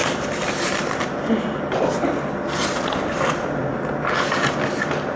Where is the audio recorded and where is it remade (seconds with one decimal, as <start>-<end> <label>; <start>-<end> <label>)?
0.0-3.1 remade; 3.1-5.2 recorded